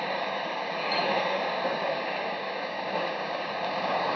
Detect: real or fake fake